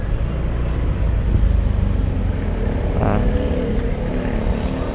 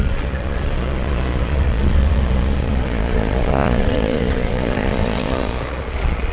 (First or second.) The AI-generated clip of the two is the second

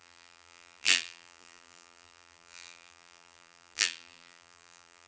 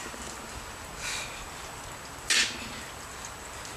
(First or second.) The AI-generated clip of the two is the first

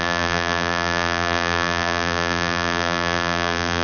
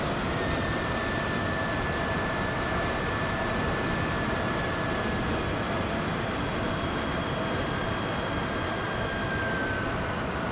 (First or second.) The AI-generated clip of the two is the first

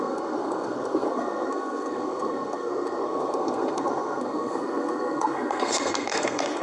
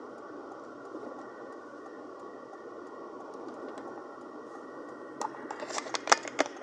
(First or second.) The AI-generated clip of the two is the first